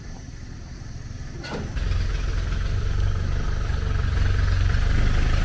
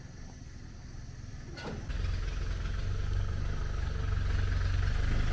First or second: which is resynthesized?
first